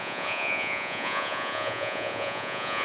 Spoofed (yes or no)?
yes